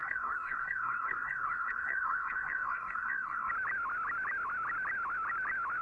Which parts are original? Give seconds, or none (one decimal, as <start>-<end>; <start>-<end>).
3.5-5.8